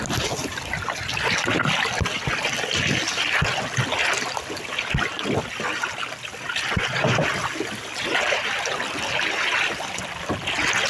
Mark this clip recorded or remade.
recorded